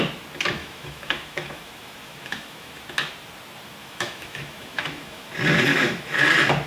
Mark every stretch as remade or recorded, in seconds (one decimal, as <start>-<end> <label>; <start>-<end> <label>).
0.0-0.6 recorded; 0.6-2.8 remade; 2.8-3.8 recorded; 3.8-5.3 remade; 5.3-5.7 recorded; 5.7-6.2 remade; 6.2-6.7 recorded